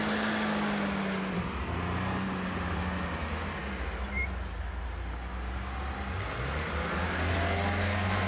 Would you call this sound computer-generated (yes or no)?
no